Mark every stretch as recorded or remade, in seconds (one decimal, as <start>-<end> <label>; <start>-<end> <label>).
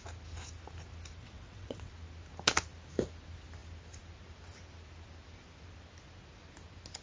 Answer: 0.0-1.2 recorded; 1.2-1.9 remade; 1.9-7.0 recorded